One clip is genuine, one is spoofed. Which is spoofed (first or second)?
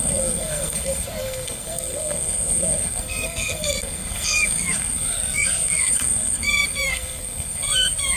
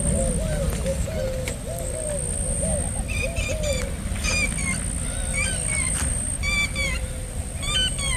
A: first